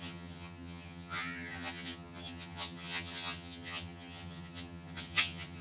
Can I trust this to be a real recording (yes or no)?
no